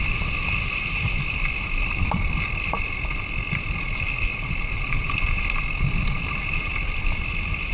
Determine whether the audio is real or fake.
real